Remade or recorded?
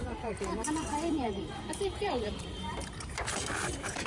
remade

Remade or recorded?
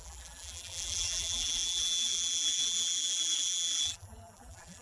remade